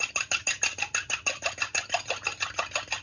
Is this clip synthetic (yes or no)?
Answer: no